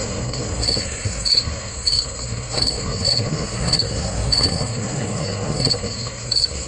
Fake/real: fake